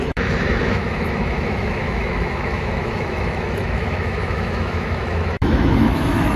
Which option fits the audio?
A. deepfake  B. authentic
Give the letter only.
A